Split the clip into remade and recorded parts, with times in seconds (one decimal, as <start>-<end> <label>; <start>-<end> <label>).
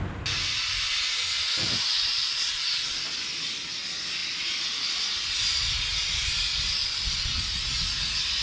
0.0-2.2 recorded; 2.2-3.0 remade; 3.0-6.8 recorded; 6.8-7.4 remade; 7.4-8.4 recorded